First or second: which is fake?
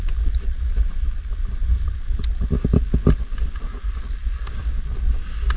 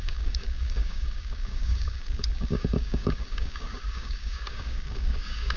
second